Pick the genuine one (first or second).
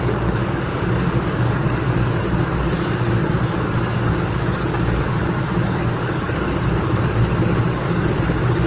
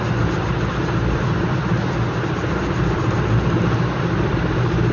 second